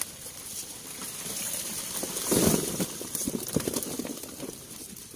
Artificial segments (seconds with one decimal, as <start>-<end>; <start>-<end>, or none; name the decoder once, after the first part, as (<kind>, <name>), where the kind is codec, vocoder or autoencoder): none